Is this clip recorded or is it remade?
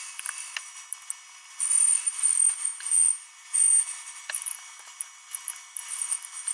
recorded